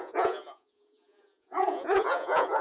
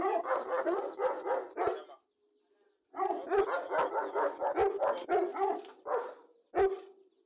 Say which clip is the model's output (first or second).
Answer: first